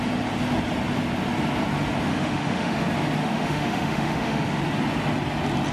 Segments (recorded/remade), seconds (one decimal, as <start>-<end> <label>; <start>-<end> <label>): 0.0-2.1 recorded; 2.1-2.8 remade; 2.8-3.2 recorded; 3.2-4.6 remade; 4.6-5.7 recorded